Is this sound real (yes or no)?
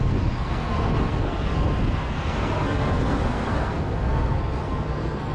no